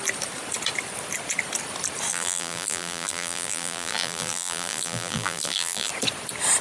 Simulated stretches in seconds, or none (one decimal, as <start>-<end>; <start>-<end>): 2.1-5.9